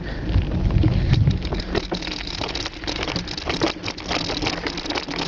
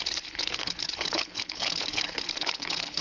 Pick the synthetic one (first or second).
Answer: second